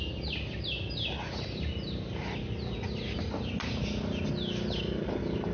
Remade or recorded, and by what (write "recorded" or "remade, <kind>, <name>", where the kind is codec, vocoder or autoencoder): recorded